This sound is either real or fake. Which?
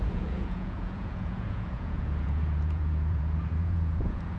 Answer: fake